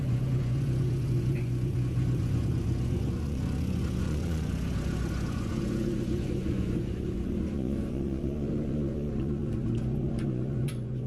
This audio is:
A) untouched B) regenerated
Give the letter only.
B